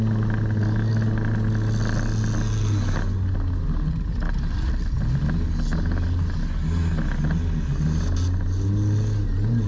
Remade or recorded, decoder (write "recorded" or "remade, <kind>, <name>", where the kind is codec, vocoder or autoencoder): recorded